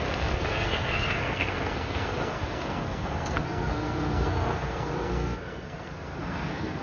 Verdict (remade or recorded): remade